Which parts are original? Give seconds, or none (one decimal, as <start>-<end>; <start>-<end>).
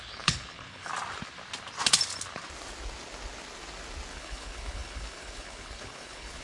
0.9-4.1